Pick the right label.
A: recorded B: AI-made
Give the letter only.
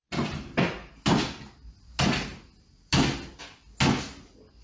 A